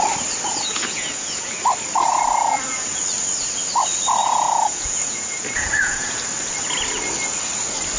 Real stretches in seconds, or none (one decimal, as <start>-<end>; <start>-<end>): 0.0-0.7; 1.5-2.1; 3.0-4.2; 6.2-8.0